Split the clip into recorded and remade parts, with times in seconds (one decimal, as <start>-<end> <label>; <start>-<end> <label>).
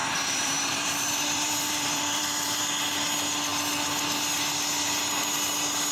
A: 0.0-2.6 remade; 2.6-5.9 recorded